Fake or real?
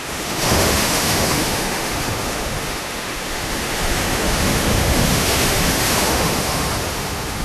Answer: fake